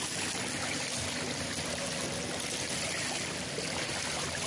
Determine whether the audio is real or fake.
real